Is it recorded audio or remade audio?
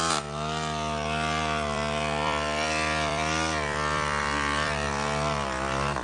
remade